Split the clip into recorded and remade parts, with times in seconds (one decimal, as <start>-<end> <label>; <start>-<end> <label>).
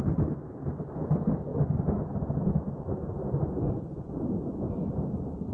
0.0-1.5 remade; 1.5-2.7 recorded; 2.7-5.5 remade